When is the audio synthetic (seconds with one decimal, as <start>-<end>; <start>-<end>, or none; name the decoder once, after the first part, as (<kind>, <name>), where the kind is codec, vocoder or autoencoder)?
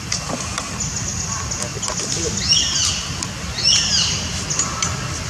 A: none